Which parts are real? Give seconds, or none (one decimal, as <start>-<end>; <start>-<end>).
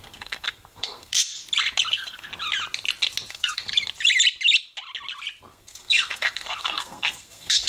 1.4-1.9; 2.3-3.3; 3.7-5.4